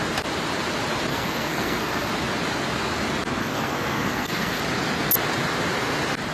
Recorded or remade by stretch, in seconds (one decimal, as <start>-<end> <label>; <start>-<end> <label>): 0.0-1.1 recorded; 1.1-2.1 remade; 2.1-3.4 recorded; 3.4-4.6 remade; 4.6-6.3 recorded